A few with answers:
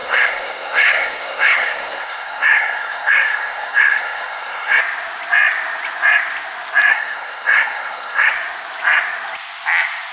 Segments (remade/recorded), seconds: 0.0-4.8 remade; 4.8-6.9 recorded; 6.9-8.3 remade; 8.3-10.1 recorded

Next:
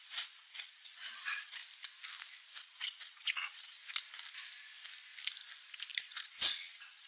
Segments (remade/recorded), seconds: 0.0-1.6 remade; 1.6-2.6 recorded; 2.6-3.8 remade; 3.8-6.0 recorded; 6.0-7.1 remade

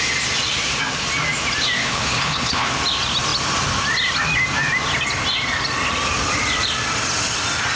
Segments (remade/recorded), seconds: 0.0-1.8 recorded; 1.8-2.7 remade; 2.7-7.8 recorded

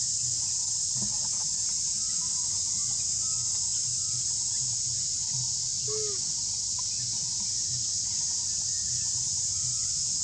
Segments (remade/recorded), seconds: 0.0-10.2 recorded

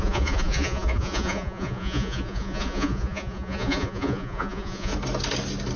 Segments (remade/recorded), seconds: 0.0-4.9 remade; 4.9-5.8 recorded

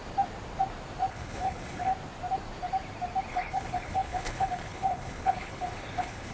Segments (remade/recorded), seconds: 0.0-1.1 recorded; 1.1-1.9 remade; 1.9-3.3 recorded; 3.3-6.3 remade